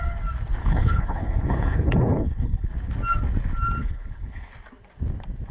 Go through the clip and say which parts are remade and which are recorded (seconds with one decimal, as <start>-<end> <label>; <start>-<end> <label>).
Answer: 0.0-0.6 recorded; 0.6-2.7 remade; 2.7-3.8 recorded; 3.8-4.5 remade; 4.5-5.5 recorded